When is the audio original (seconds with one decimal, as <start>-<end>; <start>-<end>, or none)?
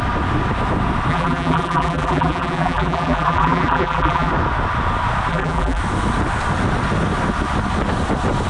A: 0.0-1.1; 4.3-5.3; 5.8-8.5